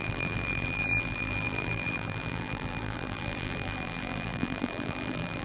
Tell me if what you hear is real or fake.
fake